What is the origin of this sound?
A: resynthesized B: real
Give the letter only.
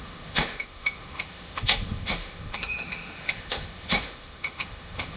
A